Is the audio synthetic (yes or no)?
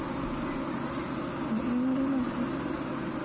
no